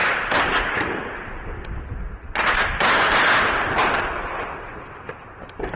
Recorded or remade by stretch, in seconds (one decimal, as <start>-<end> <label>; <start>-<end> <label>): 0.0-5.8 recorded